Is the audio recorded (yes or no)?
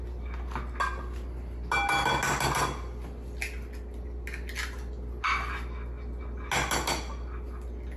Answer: yes